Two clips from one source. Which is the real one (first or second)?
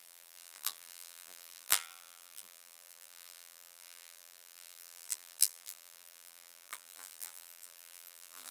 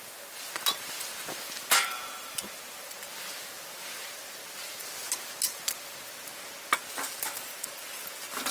second